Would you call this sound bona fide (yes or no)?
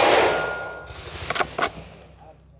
yes